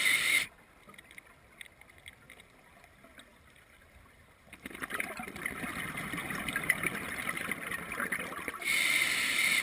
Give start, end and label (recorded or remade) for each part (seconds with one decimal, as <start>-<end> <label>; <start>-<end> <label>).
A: 0.0-3.3 recorded; 3.3-5.4 remade; 5.4-6.2 recorded; 6.2-7.7 remade; 7.7-9.6 recorded